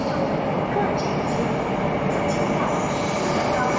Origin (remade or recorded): recorded